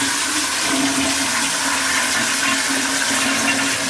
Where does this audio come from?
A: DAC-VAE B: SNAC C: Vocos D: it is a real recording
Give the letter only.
D